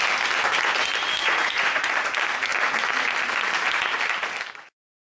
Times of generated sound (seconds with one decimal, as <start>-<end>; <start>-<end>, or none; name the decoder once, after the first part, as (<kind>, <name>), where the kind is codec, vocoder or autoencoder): 1.2-1.9 (vocoder, Vocos)